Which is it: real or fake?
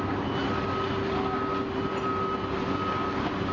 real